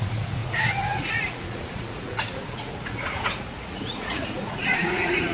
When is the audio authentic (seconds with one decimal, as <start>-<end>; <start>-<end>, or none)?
none

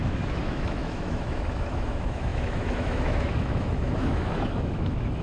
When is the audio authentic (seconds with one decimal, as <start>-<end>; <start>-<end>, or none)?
none

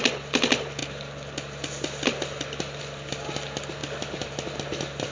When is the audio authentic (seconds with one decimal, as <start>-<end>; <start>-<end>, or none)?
0.0-5.1

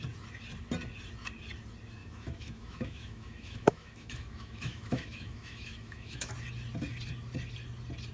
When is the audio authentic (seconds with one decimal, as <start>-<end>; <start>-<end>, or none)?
0.0-2.0; 6.3-8.1

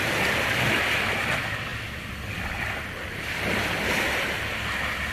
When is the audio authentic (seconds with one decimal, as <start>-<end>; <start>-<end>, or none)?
0.0-5.1

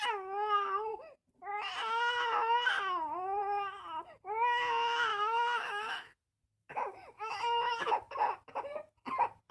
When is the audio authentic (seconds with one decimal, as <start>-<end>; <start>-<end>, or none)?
0.0-5.1; 7.9-9.5

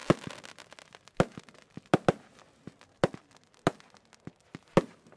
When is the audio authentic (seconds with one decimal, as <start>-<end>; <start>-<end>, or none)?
0.0-5.2